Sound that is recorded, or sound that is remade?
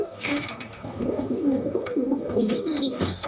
remade